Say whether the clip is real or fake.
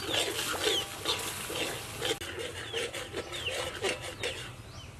real